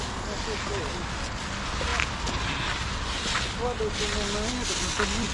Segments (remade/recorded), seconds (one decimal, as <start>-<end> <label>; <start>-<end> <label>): 0.0-5.3 recorded